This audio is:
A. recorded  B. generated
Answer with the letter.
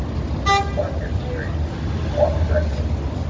A